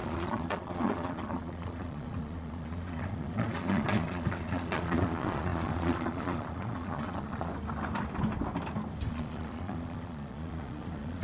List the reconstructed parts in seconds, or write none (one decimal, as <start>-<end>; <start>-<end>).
0.0-7.5; 9.1-11.2